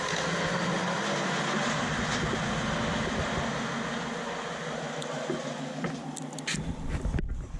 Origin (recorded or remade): recorded